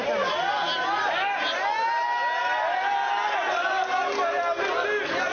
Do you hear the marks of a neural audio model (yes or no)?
no